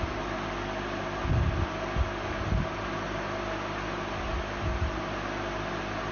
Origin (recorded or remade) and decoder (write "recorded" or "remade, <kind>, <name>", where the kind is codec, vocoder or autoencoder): recorded